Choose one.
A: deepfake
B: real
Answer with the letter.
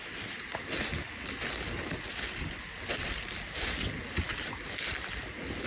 A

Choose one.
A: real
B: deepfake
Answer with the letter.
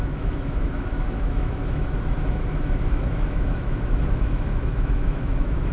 B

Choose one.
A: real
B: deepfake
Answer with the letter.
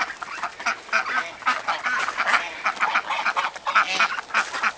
A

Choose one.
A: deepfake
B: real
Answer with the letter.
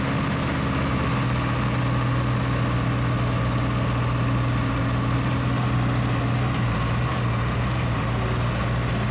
B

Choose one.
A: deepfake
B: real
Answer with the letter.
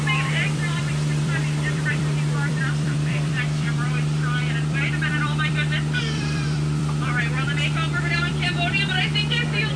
A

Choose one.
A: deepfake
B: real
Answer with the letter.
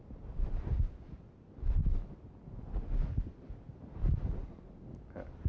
B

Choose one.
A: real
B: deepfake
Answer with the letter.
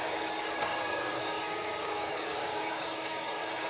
B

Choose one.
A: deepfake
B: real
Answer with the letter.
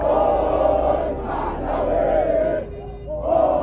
B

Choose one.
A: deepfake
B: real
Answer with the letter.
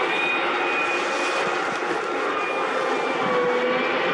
B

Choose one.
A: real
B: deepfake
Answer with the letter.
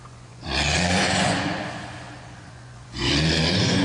B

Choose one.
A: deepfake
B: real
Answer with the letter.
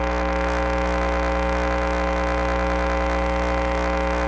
B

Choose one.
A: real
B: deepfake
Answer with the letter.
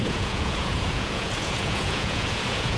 B